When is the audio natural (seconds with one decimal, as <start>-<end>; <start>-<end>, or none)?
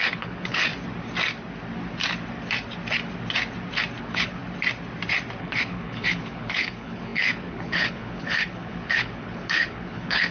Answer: 0.7-4.0; 4.4-5.4